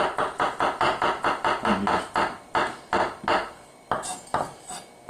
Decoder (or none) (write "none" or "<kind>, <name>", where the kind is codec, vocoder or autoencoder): none